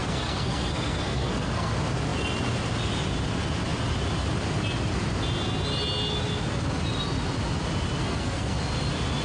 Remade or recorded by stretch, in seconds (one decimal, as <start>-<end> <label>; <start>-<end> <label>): 0.0-1.7 remade; 1.7-8.0 recorded; 8.0-8.6 remade; 8.6-9.2 recorded